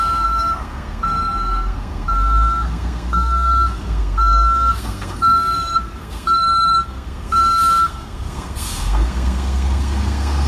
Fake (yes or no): yes